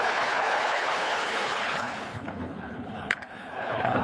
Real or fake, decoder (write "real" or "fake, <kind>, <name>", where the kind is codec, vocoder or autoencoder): fake, codec, HILCodec